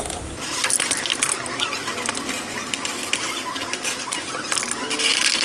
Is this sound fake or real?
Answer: real